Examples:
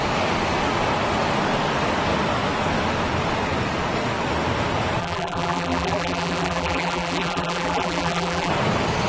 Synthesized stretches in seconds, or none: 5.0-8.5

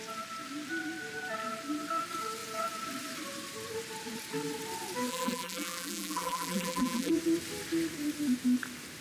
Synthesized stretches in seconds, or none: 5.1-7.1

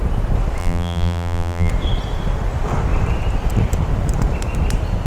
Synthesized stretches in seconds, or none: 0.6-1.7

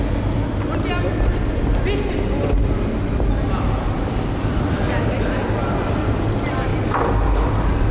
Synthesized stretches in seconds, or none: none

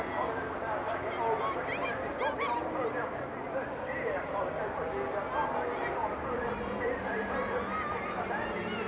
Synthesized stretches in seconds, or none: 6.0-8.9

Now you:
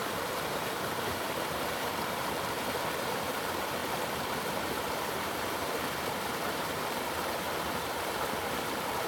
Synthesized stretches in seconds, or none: 0.0-9.1

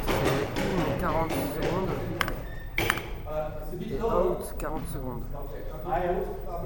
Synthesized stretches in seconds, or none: 0.0-6.7